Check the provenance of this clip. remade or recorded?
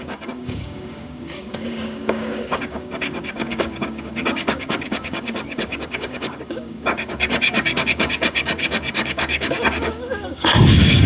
remade